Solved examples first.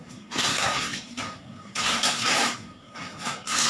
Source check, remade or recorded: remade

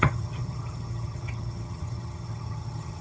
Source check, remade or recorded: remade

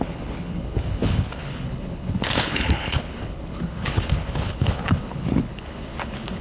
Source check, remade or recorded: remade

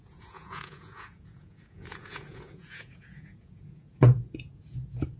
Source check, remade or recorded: remade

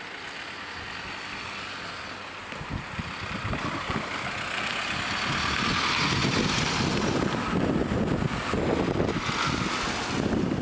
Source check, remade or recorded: recorded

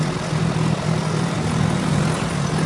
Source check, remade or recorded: recorded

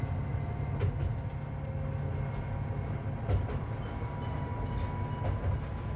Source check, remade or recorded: recorded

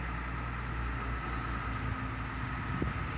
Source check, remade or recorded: recorded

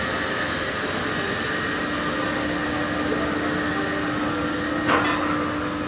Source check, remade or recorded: recorded